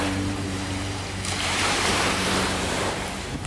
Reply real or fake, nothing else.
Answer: fake